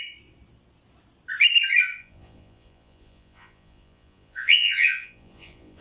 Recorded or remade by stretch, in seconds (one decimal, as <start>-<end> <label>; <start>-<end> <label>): 0.0-2.0 recorded; 2.0-5.8 remade